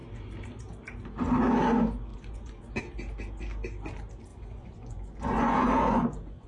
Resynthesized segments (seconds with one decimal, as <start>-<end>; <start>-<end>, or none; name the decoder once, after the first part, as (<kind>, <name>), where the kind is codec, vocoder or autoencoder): 2.1-2.8 (vocoder, Vocos); 4.3-6.5